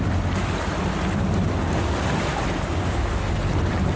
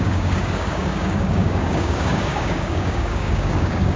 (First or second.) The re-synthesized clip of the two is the second